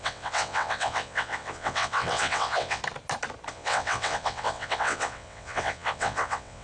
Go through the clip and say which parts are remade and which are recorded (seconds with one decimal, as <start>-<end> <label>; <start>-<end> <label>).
0.0-2.8 remade; 2.8-3.5 recorded; 3.5-6.6 remade